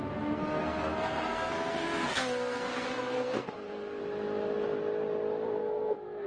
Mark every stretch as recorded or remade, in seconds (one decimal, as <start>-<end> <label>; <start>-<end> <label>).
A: 0.0-4.0 remade; 4.0-5.6 recorded; 5.6-6.3 remade